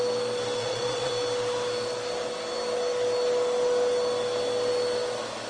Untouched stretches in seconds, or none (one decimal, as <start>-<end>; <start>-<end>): 0.0-0.6; 1.1-5.5